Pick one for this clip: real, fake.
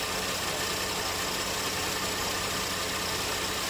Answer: real